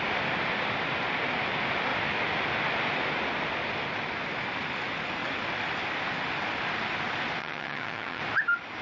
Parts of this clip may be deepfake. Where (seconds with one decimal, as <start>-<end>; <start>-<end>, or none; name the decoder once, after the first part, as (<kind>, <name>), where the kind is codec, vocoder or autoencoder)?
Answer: 7.4-8.2 (vocoder, HiFi-GAN)